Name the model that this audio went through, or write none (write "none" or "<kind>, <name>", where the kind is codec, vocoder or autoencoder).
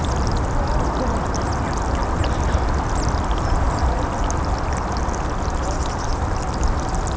none